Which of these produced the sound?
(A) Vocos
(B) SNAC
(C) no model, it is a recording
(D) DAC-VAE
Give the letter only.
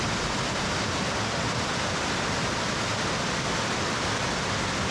C